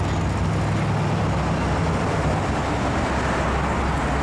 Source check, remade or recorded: recorded